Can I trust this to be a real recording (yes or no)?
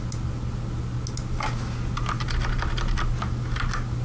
yes